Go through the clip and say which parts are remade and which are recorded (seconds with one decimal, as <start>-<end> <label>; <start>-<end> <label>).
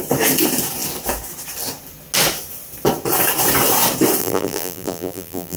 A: 0.0-4.2 recorded; 4.2-5.6 remade